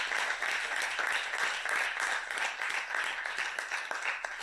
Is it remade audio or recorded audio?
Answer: recorded